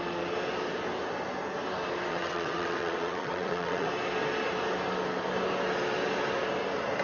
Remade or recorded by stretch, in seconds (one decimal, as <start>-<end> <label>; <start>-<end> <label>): 0.0-2.1 recorded; 2.1-3.9 remade; 3.9-7.0 recorded